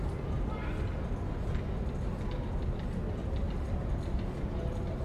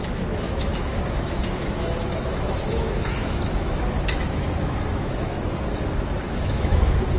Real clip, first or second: first